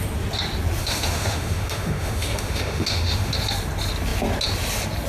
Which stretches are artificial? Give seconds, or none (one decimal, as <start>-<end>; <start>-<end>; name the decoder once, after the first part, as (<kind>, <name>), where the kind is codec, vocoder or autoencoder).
0.8-3.3 (autoencoder, DAC-VAE)